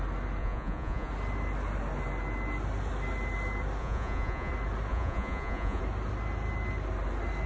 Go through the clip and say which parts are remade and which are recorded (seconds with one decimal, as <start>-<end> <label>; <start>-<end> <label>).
0.0-0.4 recorded; 0.4-1.1 remade; 1.1-3.8 recorded; 3.8-4.5 remade; 4.5-4.9 recorded; 4.9-5.8 remade; 5.8-7.5 recorded